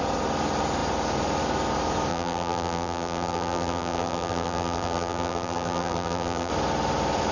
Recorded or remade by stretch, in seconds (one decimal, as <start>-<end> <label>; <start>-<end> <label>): 0.0-2.1 recorded; 2.1-6.5 remade; 6.5-7.3 recorded